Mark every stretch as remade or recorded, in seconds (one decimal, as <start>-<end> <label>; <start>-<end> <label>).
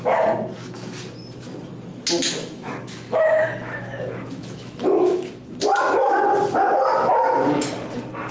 0.0-1.9 recorded; 1.9-6.2 remade; 6.2-8.3 recorded